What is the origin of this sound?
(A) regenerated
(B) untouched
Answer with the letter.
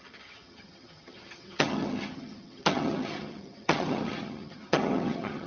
A